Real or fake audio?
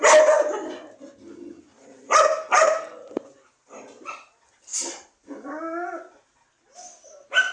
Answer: real